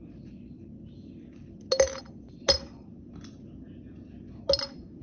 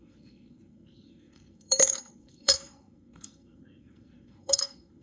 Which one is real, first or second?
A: first